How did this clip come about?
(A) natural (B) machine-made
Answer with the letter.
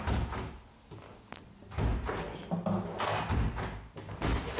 A